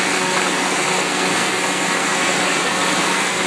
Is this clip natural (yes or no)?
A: no